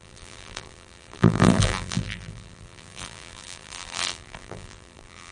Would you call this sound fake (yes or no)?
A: yes